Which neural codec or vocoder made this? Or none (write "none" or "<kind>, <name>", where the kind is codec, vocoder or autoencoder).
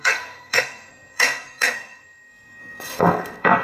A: codec, SNAC